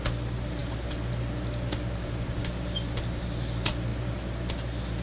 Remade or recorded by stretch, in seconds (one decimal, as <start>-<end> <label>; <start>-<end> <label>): 0.0-5.0 recorded